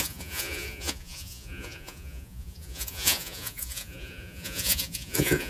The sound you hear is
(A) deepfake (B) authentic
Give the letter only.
A